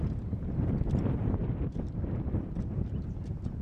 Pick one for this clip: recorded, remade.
remade